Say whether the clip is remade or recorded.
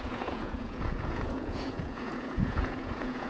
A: remade